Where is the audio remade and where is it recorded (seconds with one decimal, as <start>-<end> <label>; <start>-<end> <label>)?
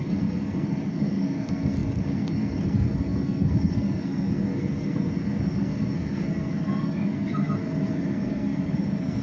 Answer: 0.0-9.2 remade